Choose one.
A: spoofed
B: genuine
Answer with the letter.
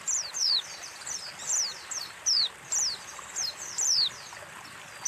A